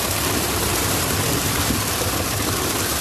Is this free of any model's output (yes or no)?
yes